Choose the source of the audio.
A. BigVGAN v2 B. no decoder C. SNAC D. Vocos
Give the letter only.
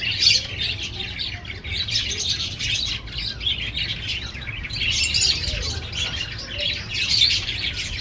B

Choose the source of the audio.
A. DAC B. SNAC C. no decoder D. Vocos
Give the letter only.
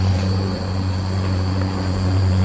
D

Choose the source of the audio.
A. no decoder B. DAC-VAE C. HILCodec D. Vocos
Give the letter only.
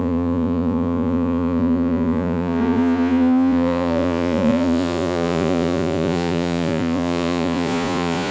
D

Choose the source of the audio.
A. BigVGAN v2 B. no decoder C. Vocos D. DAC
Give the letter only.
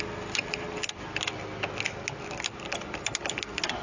B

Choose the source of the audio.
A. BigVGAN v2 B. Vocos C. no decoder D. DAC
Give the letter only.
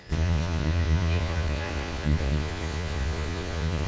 B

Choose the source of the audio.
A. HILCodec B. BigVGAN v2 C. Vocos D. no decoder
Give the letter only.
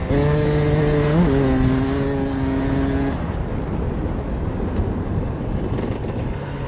D